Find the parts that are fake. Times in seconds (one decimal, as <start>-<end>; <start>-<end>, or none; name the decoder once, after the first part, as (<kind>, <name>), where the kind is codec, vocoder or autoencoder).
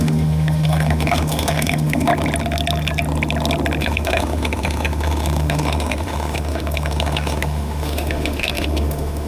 0.0-2.1 (autoencoder, DAC-VAE); 3.8-9.3